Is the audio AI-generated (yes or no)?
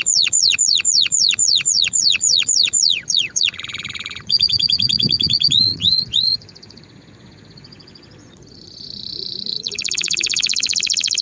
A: yes